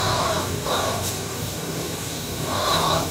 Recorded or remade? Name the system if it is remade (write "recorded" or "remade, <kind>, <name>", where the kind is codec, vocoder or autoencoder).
remade, codec, DAC